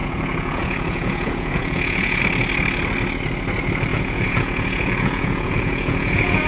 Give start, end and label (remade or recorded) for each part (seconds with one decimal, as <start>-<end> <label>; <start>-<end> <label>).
0.0-2.2 remade; 2.2-3.9 recorded; 3.9-6.5 remade